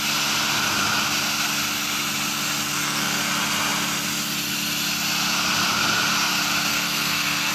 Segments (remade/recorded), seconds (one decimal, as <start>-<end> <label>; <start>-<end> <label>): 0.0-2.7 recorded; 2.7-3.2 remade; 3.2-6.7 recorded; 6.7-7.5 remade